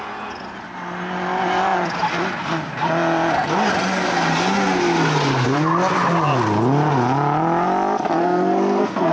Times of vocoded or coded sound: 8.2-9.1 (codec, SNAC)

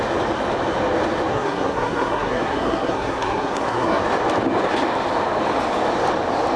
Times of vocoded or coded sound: 1.3-4.0 (codec, SNAC)